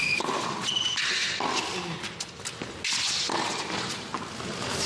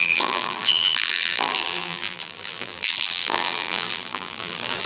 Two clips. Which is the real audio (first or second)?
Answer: first